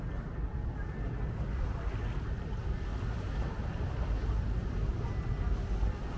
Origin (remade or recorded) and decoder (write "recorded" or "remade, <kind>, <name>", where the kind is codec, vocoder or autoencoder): recorded